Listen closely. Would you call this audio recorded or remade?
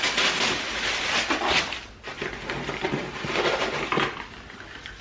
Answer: recorded